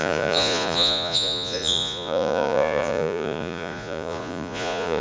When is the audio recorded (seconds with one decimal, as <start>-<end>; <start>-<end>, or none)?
none